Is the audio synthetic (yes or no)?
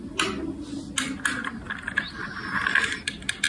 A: no